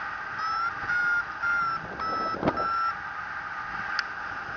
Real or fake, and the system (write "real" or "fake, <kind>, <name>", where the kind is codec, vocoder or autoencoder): real